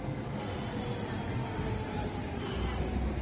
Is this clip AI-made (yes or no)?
no